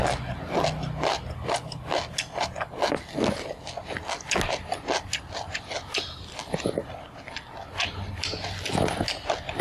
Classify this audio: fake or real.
real